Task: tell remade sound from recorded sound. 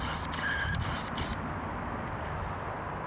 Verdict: recorded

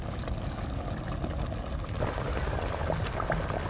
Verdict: recorded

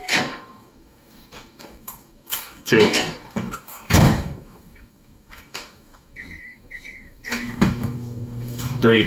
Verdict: remade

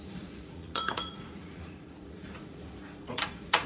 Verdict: remade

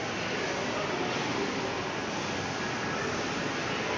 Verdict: recorded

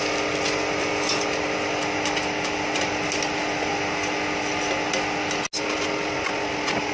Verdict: recorded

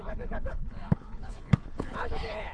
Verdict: remade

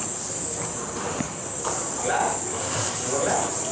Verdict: recorded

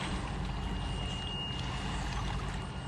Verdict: recorded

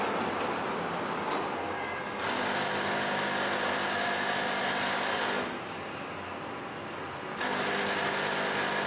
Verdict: recorded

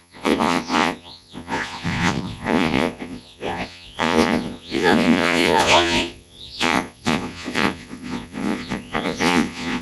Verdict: remade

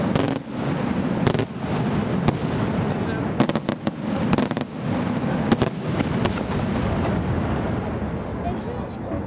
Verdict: recorded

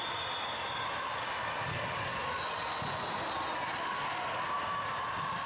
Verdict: recorded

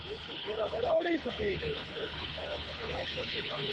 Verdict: remade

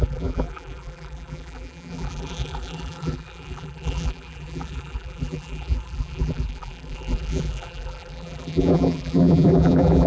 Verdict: remade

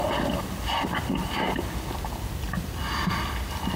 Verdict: recorded